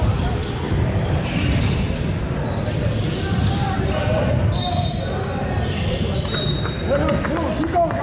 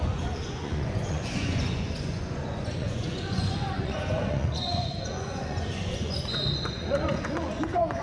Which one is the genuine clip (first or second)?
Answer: first